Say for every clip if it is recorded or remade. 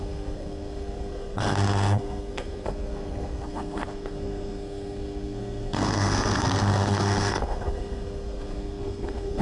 remade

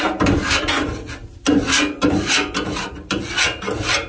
recorded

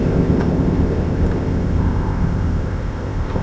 remade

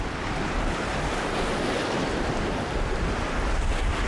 recorded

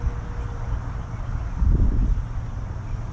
recorded